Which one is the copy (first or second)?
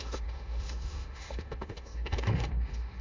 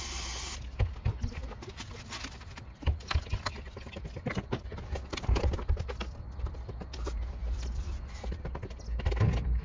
first